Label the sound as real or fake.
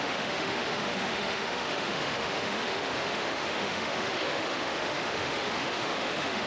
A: fake